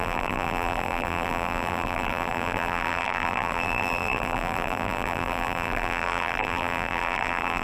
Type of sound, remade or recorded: remade